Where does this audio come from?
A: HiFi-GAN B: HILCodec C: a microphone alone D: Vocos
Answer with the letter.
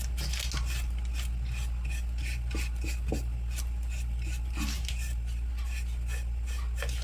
C